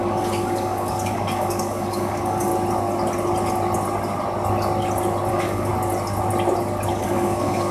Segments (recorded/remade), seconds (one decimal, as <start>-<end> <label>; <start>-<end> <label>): 0.0-2.5 remade; 2.5-5.3 recorded; 5.3-5.7 remade; 5.7-6.9 recorded; 6.9-7.7 remade